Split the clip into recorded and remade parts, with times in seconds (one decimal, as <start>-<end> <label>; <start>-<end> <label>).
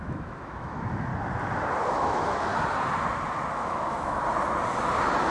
0.0-1.1 remade; 1.1-1.8 recorded; 1.8-2.5 remade; 2.5-3.5 recorded; 3.5-4.2 remade; 4.2-5.3 recorded